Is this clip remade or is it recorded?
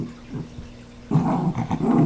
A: recorded